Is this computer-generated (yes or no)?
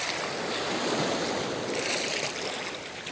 no